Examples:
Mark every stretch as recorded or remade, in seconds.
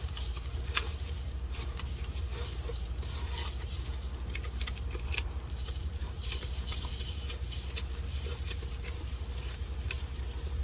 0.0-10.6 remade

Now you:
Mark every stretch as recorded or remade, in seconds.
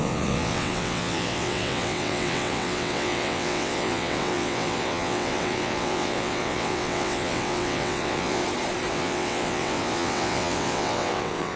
0.0-8.4 remade; 8.4-8.9 recorded; 8.9-11.6 remade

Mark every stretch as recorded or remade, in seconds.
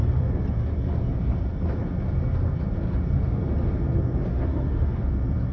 0.0-4.3 recorded; 4.3-5.0 remade; 5.0-5.5 recorded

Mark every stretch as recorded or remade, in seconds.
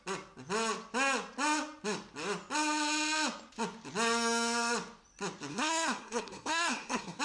0.0-5.5 recorded; 5.5-7.2 remade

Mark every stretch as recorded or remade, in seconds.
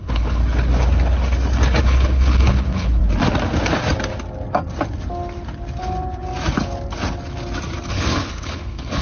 0.0-0.4 remade; 0.4-1.8 recorded; 1.8-3.0 remade; 3.0-7.9 recorded; 7.9-9.0 remade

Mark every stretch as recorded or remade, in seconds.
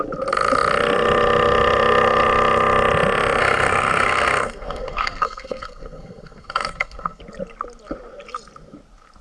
0.0-3.4 recorded; 3.4-7.2 remade; 7.2-9.2 recorded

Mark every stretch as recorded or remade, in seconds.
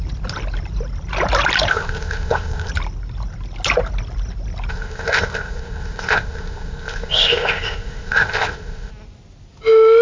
0.0-1.7 recorded; 1.7-2.7 remade; 2.7-4.7 recorded; 4.7-8.9 remade; 8.9-10.0 recorded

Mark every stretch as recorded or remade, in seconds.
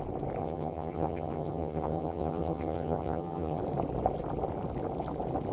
0.0-0.4 recorded; 0.4-3.6 remade; 3.6-5.5 recorded